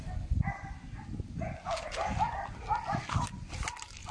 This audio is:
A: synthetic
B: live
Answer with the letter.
B